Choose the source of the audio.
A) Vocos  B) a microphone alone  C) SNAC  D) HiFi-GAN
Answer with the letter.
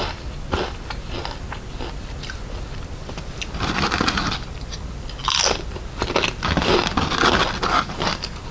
B